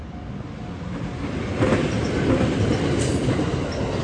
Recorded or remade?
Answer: recorded